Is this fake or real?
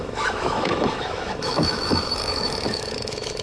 fake